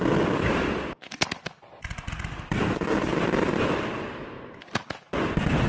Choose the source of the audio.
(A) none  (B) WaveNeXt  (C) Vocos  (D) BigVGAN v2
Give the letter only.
A